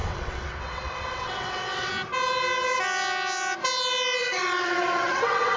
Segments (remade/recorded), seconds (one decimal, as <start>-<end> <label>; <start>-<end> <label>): 0.0-1.9 remade; 1.9-4.2 recorded; 4.2-5.6 remade